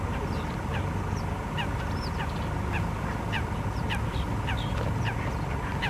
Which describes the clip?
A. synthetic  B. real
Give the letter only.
B